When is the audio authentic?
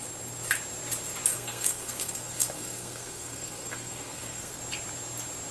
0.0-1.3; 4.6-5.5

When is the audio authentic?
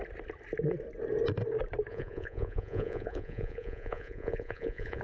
0.0-1.9